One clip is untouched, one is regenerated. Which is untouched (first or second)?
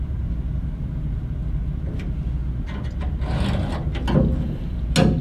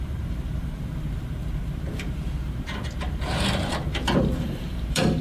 first